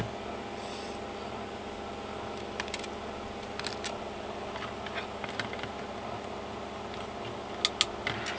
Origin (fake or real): real